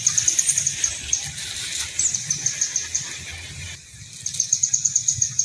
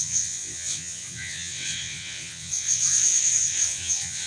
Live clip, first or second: first